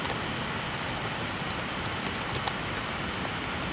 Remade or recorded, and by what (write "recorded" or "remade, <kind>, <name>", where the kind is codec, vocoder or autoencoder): recorded